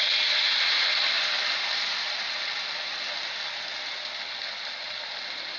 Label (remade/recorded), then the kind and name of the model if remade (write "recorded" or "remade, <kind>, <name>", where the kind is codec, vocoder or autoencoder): recorded